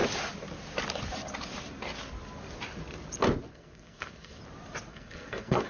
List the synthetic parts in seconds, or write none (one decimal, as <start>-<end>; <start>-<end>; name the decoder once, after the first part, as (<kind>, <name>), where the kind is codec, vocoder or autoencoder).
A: 3.5-4.4 (codec, SNAC); 4.9-5.7